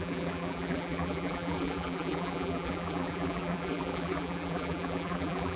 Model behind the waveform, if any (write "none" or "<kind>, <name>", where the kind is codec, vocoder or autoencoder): vocoder, BigVGAN v2